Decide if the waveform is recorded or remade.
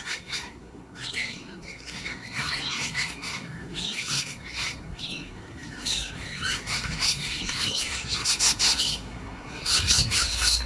remade